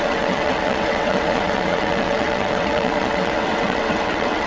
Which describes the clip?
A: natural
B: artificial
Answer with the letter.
B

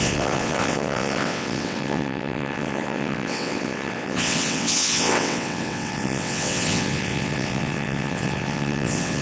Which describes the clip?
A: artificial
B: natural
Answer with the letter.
A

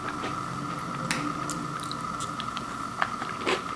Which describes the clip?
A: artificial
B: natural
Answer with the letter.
B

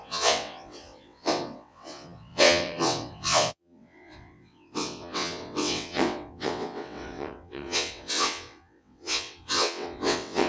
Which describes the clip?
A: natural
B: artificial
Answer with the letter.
B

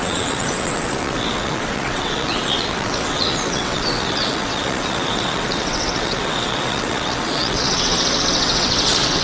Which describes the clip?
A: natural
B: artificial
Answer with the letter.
B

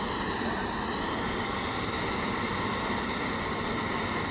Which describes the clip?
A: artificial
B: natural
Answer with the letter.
B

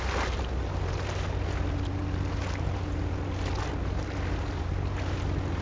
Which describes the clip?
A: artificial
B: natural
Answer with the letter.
B